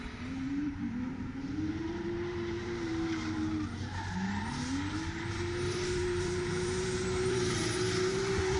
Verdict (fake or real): fake